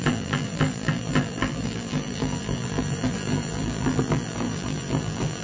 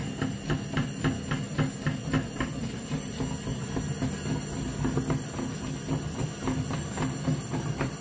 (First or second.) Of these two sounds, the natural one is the second